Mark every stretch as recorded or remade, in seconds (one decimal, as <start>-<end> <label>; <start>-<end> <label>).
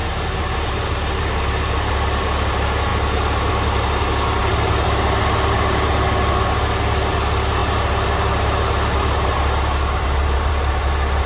0.0-1.9 remade; 1.9-2.9 recorded; 2.9-3.5 remade; 3.5-4.4 recorded; 4.4-5.9 remade; 5.9-7.6 recorded; 7.6-10.5 remade; 10.5-11.3 recorded